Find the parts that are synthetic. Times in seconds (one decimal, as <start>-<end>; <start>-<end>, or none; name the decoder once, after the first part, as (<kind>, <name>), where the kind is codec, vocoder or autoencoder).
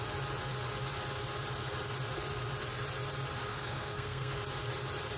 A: 3.5-4.4 (codec, SNAC)